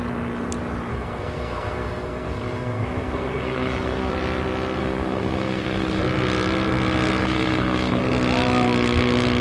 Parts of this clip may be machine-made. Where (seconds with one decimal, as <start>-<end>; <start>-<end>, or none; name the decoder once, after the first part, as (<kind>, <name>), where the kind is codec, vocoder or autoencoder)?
0.9-4.1 (codec, SNAC); 4.8-6.0; 7.2-8.0